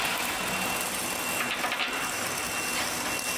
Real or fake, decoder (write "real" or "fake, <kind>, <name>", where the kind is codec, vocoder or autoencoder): real